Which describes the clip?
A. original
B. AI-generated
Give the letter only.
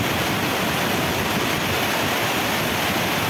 A